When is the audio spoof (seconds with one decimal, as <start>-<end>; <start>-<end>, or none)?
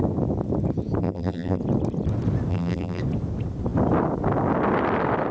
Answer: 1.0-1.6; 2.5-3.0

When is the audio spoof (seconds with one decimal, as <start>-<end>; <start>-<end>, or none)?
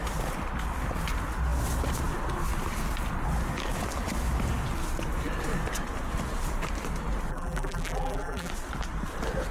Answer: 7.3-8.5